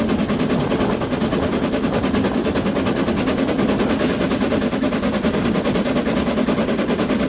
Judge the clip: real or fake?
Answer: real